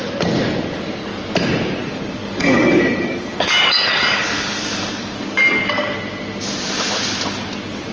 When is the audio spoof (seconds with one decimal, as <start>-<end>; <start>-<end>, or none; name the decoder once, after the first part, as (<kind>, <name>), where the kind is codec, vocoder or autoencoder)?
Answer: 1.8-6.0 (codec, DAC)

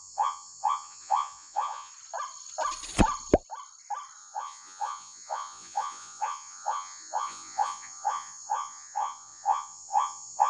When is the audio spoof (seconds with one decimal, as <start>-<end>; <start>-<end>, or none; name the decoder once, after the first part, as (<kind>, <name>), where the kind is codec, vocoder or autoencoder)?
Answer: 0.0-1.9 (vocoder, Vocos); 4.2-10.5

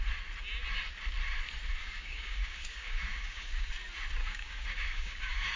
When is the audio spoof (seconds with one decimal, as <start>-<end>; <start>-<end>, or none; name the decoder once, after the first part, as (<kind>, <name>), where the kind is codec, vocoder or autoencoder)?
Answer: 1.8-3.7 (codec, DAC); 4.2-5.6

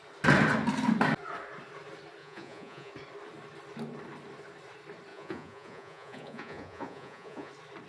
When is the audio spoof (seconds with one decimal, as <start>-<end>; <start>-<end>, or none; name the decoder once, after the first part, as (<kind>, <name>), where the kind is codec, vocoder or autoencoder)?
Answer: 2.2-2.9 (vocoder, Vocos); 5.1-7.5

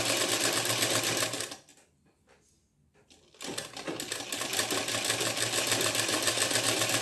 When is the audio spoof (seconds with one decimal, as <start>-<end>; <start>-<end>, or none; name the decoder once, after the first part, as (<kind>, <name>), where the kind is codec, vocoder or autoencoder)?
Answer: none

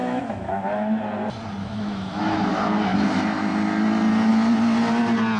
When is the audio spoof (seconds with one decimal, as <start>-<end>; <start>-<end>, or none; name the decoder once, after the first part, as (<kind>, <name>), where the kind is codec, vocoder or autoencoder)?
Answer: 0.0-1.0 (autoencoder, DAC-VAE); 1.6-2.2

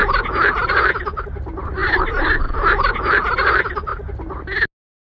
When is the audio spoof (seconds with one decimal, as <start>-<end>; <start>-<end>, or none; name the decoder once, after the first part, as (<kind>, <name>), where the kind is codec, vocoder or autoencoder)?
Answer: none